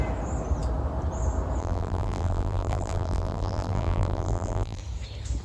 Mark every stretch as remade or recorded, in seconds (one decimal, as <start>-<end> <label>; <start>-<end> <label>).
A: 0.0-1.6 recorded; 1.6-4.8 remade; 4.8-5.4 recorded